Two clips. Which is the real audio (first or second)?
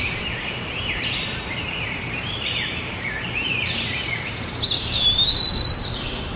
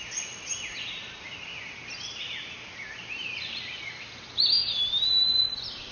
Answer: second